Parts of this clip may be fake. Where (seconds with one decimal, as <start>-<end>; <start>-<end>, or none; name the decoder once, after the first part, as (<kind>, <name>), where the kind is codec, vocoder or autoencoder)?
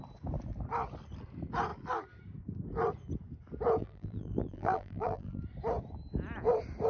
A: 3.8-5.4 (vocoder, BigVGAN v2)